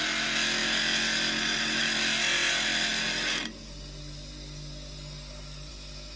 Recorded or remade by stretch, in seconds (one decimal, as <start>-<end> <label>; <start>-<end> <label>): 0.0-6.2 recorded